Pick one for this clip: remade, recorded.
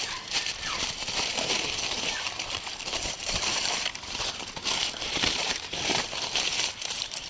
remade